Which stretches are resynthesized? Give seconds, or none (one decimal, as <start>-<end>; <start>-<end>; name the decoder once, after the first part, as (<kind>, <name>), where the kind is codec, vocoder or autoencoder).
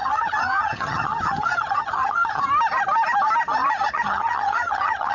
0.0-2.5 (vocoder, HiFi-GAN); 3.9-5.1